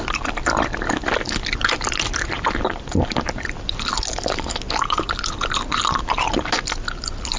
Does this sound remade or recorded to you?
recorded